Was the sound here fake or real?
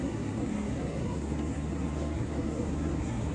fake